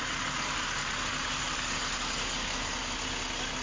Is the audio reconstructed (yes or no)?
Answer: no